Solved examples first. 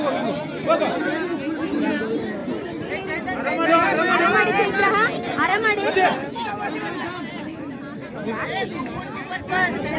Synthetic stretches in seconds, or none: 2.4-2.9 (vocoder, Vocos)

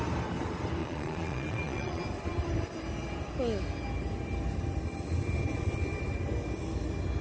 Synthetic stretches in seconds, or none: 0.8-2.0 (vocoder, Vocos)